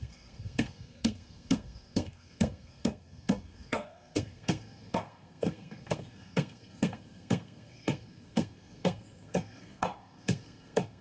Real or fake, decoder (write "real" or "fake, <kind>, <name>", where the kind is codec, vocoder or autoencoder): fake, codec, SNAC